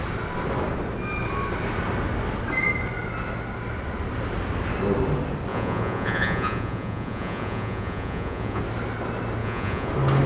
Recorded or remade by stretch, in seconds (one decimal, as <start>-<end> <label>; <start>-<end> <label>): 0.0-5.5 recorded; 5.5-8.6 remade; 8.6-9.4 recorded; 9.4-9.9 remade; 9.9-10.3 recorded